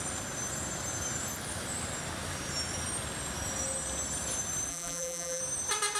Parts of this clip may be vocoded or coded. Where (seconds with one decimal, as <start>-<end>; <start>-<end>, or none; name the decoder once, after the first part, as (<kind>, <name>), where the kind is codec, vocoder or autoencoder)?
4.7-5.4 (vocoder, BigVGAN v2)